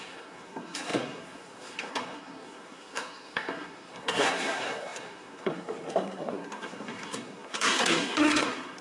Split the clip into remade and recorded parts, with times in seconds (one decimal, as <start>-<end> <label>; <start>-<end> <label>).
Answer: 0.0-8.8 remade